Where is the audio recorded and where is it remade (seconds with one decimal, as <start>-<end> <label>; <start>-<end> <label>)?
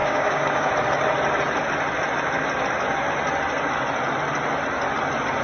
0.0-0.7 remade; 0.7-5.4 recorded